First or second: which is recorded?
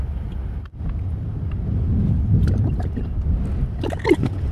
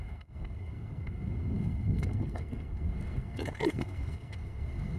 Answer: first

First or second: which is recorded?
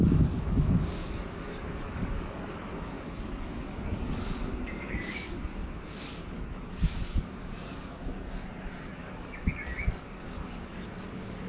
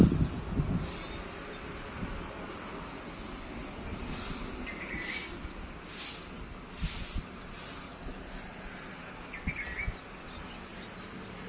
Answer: second